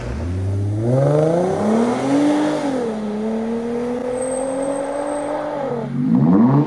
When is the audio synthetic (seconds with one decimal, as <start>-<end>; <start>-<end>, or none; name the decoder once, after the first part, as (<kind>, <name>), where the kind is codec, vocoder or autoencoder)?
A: 4.0-5.7 (vocoder, BigVGAN v2)